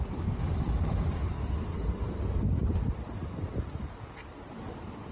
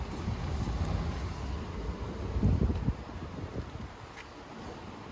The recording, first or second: second